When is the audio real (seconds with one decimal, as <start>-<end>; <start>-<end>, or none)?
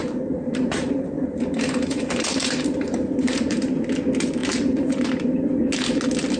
3.8-4.4; 5.5-6.4